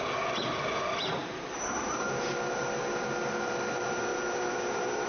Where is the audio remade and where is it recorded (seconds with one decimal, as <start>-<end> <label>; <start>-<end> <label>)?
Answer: 0.0-1.2 recorded; 1.2-2.6 remade; 2.6-4.1 recorded; 4.1-5.1 remade